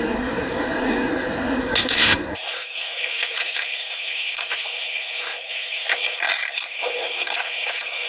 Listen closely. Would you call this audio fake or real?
fake